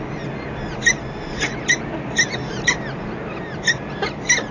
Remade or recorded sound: recorded